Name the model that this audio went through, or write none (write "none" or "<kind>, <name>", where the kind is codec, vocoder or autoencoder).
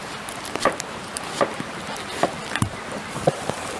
none